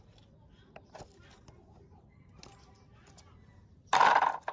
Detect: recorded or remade recorded